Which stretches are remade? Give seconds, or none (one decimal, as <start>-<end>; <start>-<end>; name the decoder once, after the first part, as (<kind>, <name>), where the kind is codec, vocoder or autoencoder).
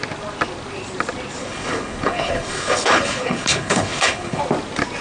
1.4-4.4 (codec, HILCodec)